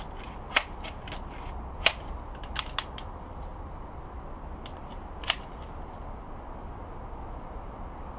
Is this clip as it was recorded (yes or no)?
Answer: yes